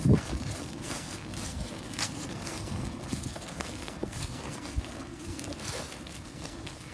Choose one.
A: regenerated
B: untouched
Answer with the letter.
A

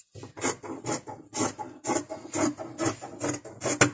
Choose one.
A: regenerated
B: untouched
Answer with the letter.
B